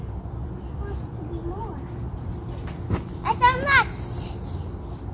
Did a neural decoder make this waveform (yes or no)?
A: no